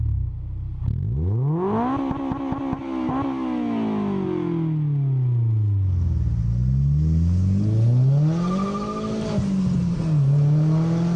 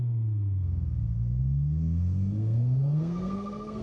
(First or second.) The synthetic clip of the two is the second